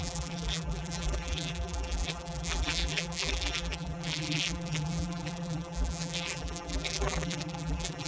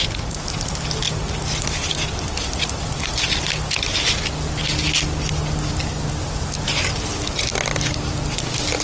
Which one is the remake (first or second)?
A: first